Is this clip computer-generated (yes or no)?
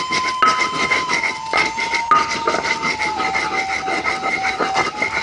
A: no